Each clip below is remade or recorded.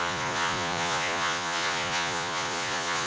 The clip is remade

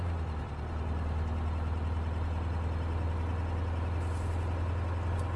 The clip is recorded